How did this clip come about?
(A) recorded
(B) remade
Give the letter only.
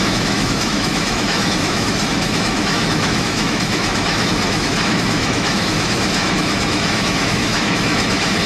B